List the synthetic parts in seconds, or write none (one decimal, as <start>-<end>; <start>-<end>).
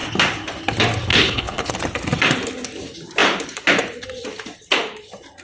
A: 1.1-1.7